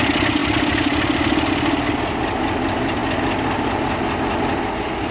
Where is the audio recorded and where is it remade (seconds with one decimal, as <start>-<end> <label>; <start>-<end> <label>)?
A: 0.0-5.1 recorded